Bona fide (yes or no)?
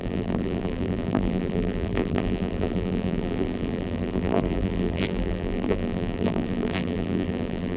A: no